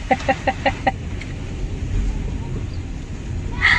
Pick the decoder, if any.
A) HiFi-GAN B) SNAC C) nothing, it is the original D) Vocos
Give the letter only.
C